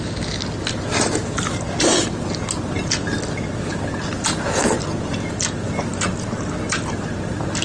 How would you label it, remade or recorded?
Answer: recorded